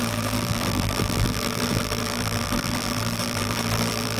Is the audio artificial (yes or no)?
yes